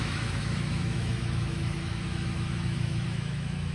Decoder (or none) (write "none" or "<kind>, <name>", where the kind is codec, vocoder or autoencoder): autoencoder, DAC-VAE